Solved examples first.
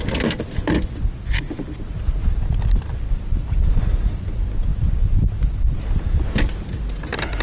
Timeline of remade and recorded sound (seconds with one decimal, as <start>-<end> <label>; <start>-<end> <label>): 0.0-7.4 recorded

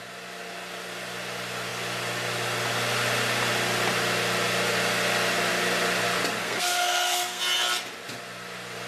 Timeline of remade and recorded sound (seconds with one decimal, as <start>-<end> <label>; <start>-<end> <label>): 0.0-6.4 recorded; 6.4-7.4 remade; 7.4-8.9 recorded

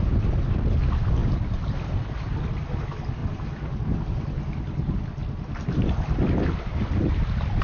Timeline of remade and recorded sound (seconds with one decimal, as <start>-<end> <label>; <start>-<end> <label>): 0.0-3.2 recorded; 3.2-4.0 remade; 4.0-5.2 recorded; 5.2-7.6 remade

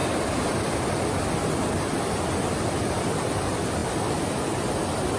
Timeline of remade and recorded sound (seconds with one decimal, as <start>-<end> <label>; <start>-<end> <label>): 0.0-5.2 recorded

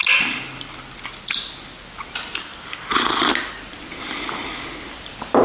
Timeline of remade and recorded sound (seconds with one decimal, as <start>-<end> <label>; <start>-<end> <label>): 0.0-2.9 recorded; 2.9-5.4 remade